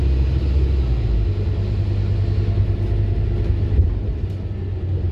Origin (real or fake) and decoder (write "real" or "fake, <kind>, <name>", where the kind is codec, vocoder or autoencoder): real